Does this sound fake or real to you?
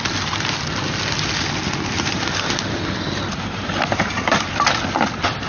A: real